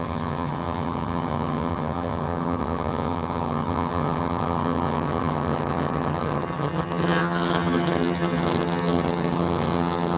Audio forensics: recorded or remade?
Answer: remade